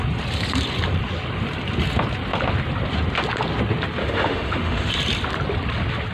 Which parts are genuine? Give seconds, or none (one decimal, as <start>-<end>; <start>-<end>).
0.0-4.0; 4.9-6.1